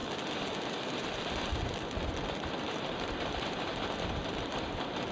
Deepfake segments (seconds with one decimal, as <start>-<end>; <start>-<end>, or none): none

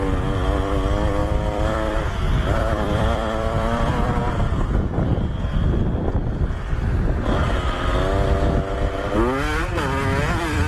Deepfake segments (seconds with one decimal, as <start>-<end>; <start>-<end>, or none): 1.2-4.2; 5.1-6.1

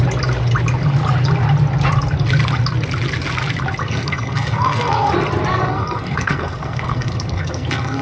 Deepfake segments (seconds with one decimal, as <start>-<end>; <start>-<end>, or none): 3.8-5.1; 5.5-8.0

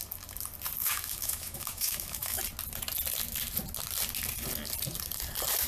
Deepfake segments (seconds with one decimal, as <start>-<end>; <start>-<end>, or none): 0.8-2.4

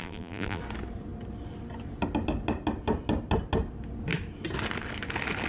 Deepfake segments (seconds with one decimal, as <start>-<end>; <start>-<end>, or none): 0.0-0.6

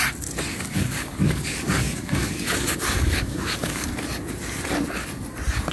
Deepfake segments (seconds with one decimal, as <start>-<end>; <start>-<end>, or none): 0.5-3.9

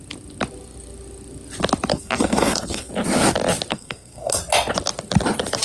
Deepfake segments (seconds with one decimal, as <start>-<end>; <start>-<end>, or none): 1.9-2.9; 3.7-4.4

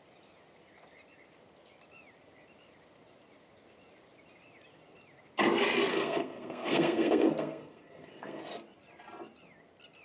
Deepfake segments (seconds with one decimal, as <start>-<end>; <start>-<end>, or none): 5.9-8.4